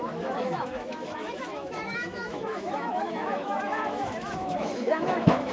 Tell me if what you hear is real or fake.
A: fake